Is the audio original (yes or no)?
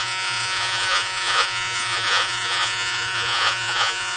no